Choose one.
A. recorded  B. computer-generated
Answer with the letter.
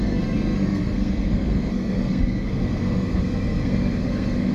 B